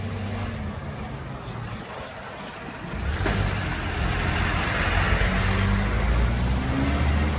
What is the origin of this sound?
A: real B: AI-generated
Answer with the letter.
A